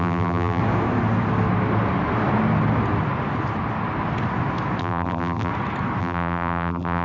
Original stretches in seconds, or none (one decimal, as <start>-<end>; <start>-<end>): 0.6-4.8; 5.5-6.0